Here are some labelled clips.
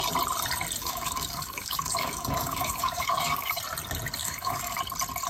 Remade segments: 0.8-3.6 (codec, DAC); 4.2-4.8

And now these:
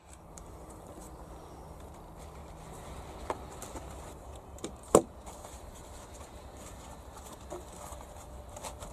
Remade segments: 0.0-2.4 (vocoder, BigVGAN v2); 5.3-8.9